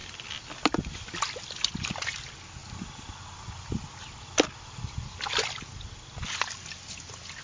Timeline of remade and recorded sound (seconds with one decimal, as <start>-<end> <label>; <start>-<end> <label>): 0.0-7.4 recorded

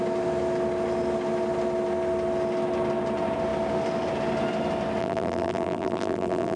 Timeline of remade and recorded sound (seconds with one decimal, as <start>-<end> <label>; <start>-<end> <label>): 0.0-5.0 recorded; 5.0-6.6 remade

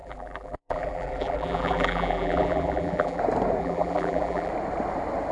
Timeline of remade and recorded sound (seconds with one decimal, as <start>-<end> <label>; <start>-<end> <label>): 0.0-3.2 remade; 3.2-3.6 recorded; 3.6-4.5 remade; 4.5-5.3 recorded

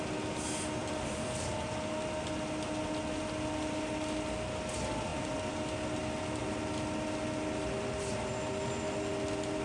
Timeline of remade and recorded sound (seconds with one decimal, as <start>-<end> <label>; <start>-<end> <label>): 0.0-0.8 recorded; 0.8-1.3 remade; 1.3-9.6 recorded

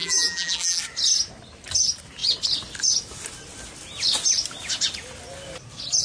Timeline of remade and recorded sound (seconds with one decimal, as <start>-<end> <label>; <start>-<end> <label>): 0.0-0.8 remade; 0.8-6.0 recorded

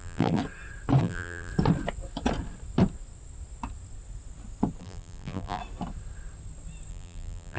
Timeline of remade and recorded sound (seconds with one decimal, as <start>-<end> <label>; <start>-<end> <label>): 0.0-0.4 remade; 0.4-1.0 recorded; 1.0-1.5 remade; 1.5-4.8 recorded; 4.8-5.6 remade; 5.6-6.9 recorded; 6.9-7.6 remade